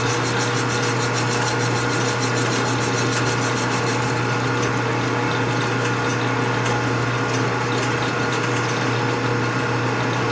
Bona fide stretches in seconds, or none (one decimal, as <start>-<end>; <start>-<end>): 0.0-10.3